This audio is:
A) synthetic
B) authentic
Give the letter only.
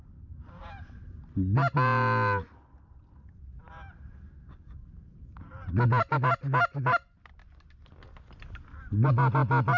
B